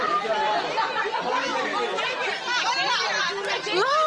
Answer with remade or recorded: recorded